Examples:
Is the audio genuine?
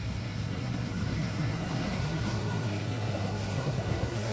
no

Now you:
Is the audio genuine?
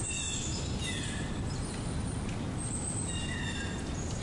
yes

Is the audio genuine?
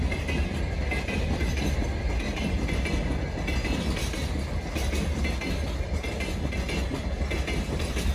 yes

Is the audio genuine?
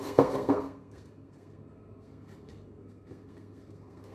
no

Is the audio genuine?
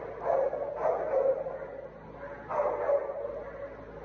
yes